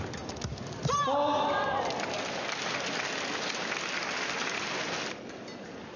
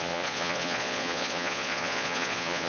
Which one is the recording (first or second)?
first